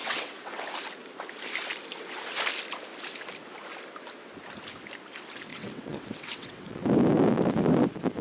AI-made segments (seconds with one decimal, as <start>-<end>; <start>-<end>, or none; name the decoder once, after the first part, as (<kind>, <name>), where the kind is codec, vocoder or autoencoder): 0.0-0.6 (vocoder, WaveNeXt); 5.5-6.8